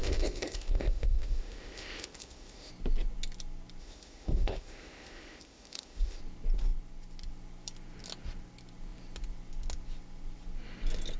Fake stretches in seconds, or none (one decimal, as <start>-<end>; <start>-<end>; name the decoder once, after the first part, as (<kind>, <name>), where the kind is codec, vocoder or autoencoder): 0.0-2.7 (codec, ZipCodec); 3.8-6.2